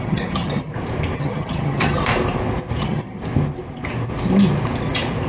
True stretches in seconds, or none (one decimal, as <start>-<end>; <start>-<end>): 0.7-1.2; 2.0-2.8; 3.2-5.3